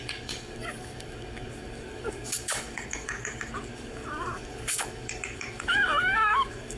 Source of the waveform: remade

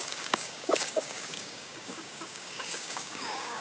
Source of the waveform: remade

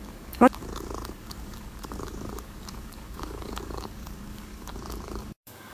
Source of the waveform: remade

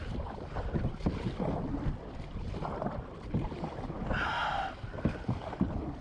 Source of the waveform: recorded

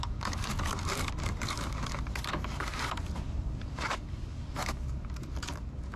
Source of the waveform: remade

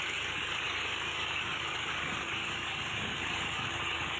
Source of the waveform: remade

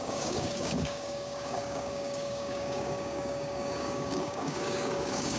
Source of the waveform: remade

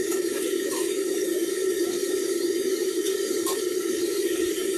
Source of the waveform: remade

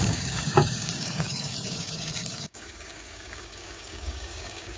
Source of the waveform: remade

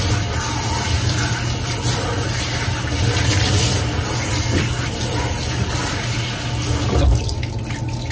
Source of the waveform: recorded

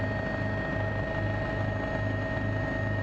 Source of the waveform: recorded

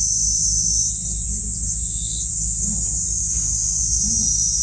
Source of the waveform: recorded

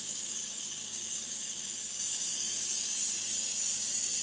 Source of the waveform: remade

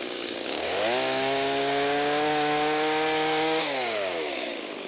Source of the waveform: remade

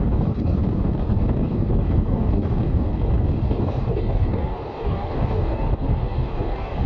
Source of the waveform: remade